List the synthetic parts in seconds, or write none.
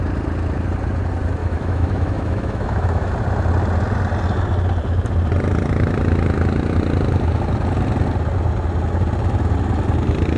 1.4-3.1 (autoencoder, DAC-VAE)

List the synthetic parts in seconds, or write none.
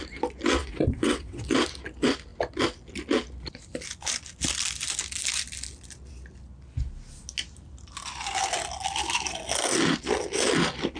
0.6-1.4 (vocoder, WaveNeXt)